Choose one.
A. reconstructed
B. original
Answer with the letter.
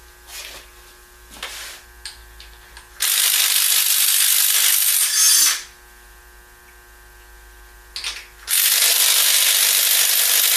B